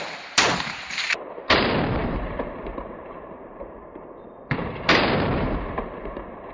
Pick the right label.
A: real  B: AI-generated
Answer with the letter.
B